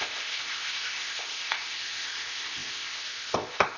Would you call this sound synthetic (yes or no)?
yes